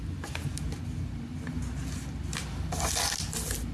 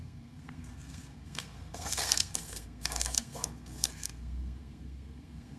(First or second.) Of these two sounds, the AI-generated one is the second